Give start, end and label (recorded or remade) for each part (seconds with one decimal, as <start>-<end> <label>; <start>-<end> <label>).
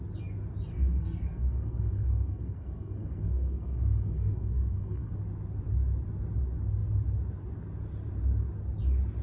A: 0.0-0.7 recorded; 0.7-5.1 remade; 5.1-9.2 recorded